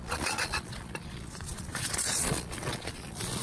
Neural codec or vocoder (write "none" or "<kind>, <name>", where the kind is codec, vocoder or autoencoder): vocoder, Vocos